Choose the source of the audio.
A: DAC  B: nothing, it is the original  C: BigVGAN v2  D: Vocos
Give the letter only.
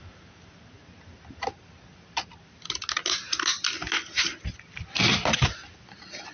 B